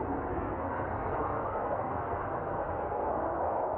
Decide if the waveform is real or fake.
fake